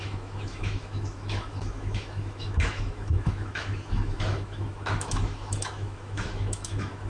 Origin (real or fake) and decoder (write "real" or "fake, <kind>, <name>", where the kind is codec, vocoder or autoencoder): fake, autoencoder, DAC-VAE